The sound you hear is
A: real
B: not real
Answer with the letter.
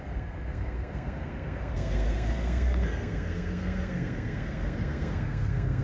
B